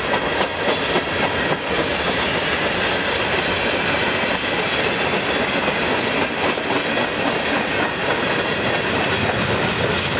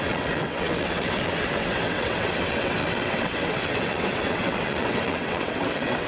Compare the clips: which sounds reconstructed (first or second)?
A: second